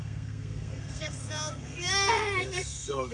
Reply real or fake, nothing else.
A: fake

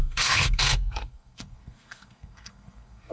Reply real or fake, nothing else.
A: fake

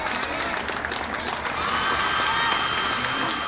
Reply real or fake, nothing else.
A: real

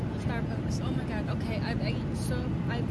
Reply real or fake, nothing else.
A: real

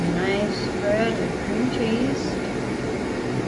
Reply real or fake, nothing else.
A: real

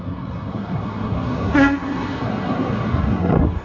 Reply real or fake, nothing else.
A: fake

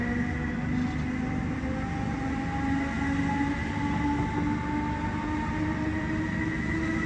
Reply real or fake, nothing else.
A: real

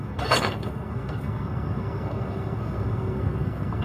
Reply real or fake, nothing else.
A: fake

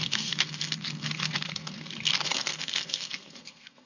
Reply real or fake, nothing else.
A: fake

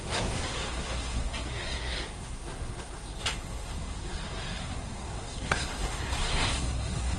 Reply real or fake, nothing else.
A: fake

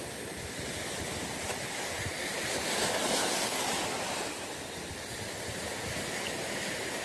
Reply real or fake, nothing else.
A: real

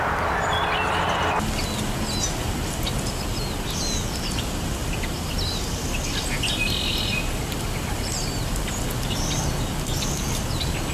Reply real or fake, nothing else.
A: real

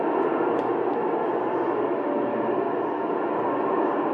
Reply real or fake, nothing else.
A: real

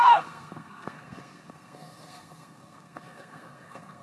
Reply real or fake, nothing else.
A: fake